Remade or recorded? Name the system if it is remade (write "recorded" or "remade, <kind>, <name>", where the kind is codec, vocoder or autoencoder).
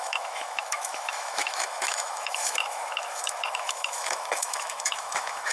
remade, autoencoder, DAC-VAE